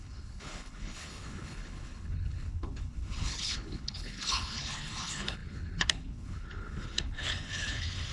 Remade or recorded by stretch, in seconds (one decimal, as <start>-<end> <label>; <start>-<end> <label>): 0.0-8.1 remade